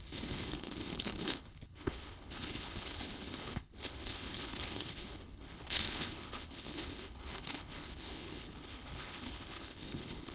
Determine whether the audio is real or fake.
fake